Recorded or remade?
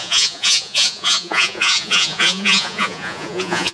remade